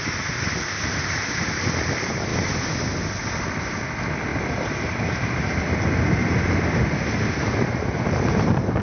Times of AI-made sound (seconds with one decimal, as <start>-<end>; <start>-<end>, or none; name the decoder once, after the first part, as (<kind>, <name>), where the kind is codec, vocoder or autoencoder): 2.3-3.1 (vocoder, BigVGAN v2); 4.3-5.6; 6.2-6.8; 7.5-8.8